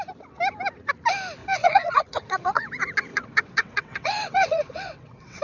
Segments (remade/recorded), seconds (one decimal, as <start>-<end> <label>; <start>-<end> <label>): 0.0-1.4 recorded; 1.4-2.7 remade; 2.7-3.1 recorded; 3.1-5.4 remade